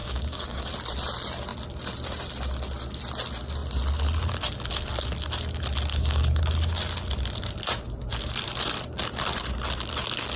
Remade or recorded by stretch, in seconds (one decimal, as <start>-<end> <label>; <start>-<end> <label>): 0.0-0.7 remade; 0.7-5.9 recorded; 5.9-6.4 remade; 6.4-10.4 recorded